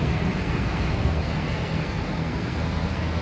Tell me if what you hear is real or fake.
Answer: fake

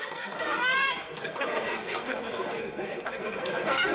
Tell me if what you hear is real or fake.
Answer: fake